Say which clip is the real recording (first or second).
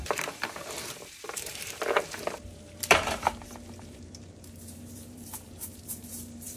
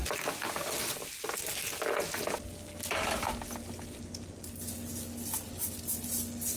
second